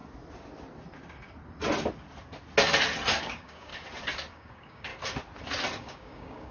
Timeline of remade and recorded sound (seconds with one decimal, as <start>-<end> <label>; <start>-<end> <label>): 0.0-3.2 recorded; 3.2-3.7 remade; 3.7-4.3 recorded; 4.3-4.9 remade; 4.9-5.8 recorded; 5.8-6.5 remade